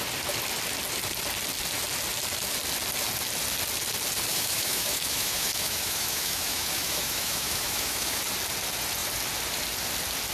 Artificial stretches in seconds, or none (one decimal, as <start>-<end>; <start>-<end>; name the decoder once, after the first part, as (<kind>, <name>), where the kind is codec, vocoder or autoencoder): 4.3-8.2 (autoencoder, DAC-VAE)